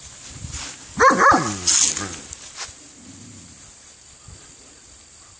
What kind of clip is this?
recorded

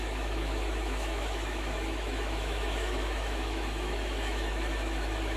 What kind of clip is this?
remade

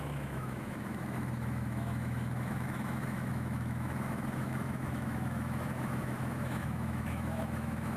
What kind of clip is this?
remade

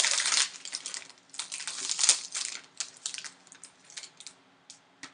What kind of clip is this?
recorded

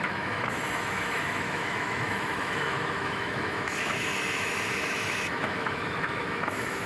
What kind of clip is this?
remade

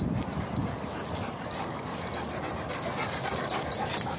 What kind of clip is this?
recorded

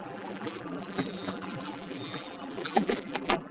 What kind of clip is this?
remade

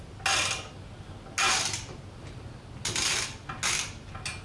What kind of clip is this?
recorded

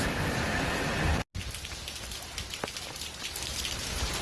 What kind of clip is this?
recorded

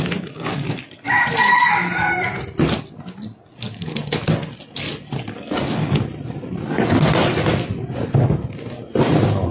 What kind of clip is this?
recorded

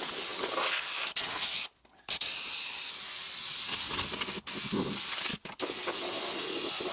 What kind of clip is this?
recorded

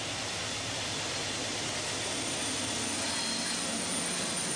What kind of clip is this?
recorded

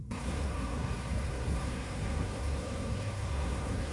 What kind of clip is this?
remade